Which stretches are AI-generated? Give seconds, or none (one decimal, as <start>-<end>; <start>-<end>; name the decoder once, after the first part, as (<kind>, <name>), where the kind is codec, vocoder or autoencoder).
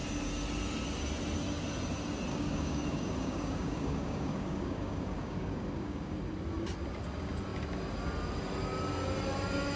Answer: 2.3-6.2 (codec, DAC)